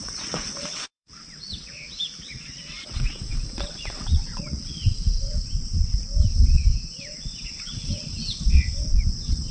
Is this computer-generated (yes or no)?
yes